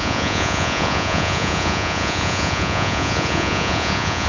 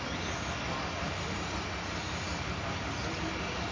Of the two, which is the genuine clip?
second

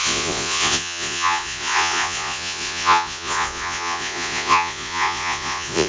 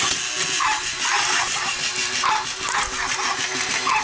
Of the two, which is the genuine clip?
second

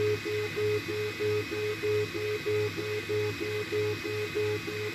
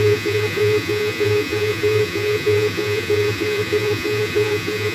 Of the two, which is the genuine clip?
first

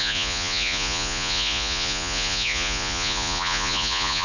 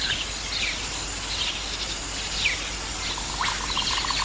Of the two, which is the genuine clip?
second